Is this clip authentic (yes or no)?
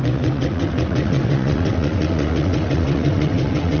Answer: no